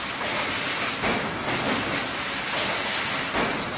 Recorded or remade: recorded